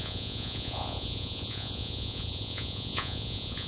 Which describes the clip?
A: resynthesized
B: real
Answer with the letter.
A